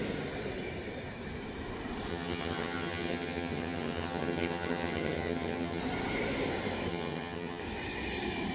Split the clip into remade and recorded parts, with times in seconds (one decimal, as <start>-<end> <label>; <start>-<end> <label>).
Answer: 0.0-2.1 recorded; 2.1-5.8 remade; 5.8-6.9 recorded; 6.9-7.6 remade; 7.6-8.5 recorded